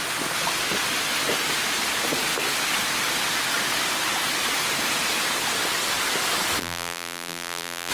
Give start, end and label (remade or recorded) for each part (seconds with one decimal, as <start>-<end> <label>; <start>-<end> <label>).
0.0-6.6 recorded; 6.6-7.9 remade